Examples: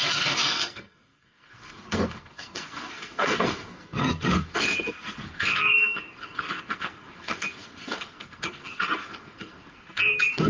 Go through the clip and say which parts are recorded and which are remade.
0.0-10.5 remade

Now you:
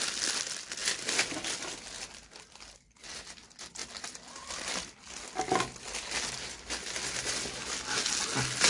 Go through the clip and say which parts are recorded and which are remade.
0.0-8.7 recorded

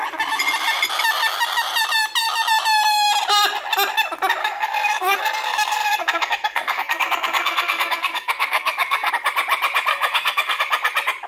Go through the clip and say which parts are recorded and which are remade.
0.0-4.4 recorded; 4.4-9.1 remade; 9.1-9.9 recorded; 9.9-10.6 remade; 10.6-11.3 recorded

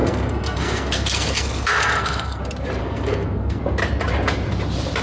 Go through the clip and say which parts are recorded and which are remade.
0.0-2.4 remade; 2.4-2.8 recorded; 2.8-3.6 remade; 3.6-5.0 recorded

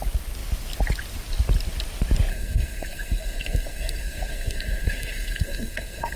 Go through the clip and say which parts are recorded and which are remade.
0.0-2.3 recorded; 2.3-6.2 remade